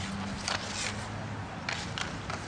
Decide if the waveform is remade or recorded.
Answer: recorded